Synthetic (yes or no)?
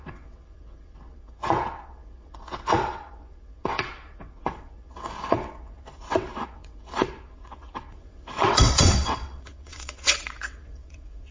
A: yes